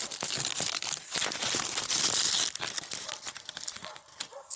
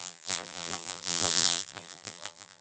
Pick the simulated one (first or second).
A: second